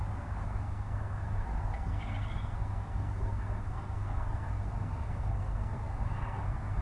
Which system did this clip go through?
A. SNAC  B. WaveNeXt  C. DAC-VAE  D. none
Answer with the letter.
A